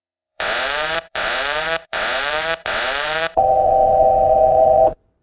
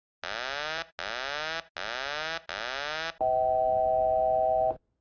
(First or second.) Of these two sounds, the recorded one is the second